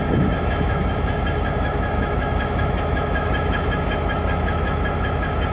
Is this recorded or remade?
remade